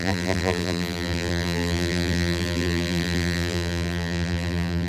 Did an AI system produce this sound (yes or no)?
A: yes